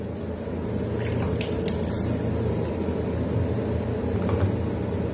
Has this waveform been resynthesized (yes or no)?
no